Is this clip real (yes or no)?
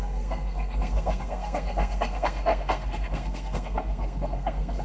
no